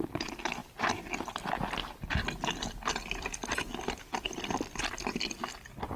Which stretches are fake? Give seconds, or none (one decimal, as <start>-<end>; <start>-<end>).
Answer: none